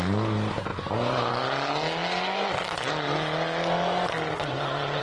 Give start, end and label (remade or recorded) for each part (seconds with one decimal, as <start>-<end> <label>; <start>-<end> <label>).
0.0-5.0 recorded